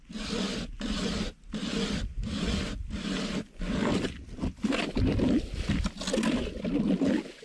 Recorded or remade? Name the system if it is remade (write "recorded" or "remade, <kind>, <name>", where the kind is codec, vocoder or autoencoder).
recorded